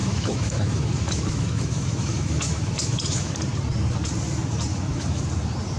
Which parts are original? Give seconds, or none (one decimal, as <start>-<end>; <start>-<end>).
3.3-4.7; 5.2-5.8